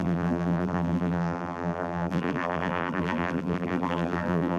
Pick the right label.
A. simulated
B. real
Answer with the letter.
A